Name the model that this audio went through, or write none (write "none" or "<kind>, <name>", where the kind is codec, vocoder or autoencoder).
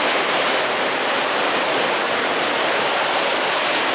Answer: none